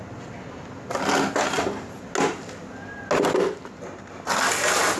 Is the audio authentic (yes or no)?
yes